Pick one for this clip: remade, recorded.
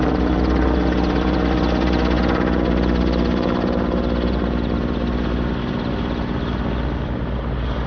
recorded